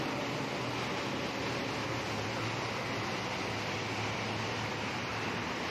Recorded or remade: recorded